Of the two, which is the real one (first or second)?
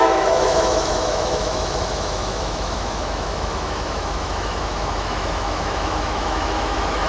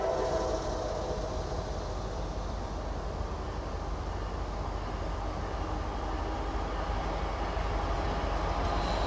second